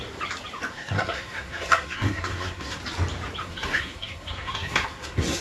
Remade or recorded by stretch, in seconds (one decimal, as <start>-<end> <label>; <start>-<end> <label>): 0.0-0.7 recorded; 0.7-2.8 remade; 2.8-3.4 recorded; 3.4-5.4 remade